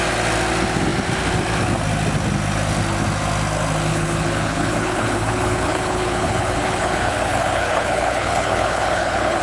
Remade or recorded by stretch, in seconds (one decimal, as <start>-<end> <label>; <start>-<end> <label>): 0.0-3.9 recorded; 3.9-9.4 remade